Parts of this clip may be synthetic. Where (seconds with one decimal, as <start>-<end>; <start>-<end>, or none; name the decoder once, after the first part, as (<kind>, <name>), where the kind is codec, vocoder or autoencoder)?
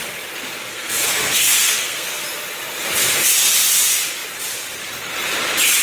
0.7-2.2 (codec, SNAC)